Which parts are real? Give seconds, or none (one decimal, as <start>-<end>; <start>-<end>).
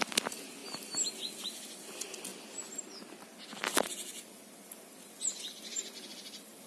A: 0.0-6.7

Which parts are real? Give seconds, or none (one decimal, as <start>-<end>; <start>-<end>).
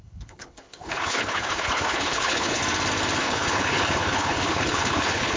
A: 2.6-3.2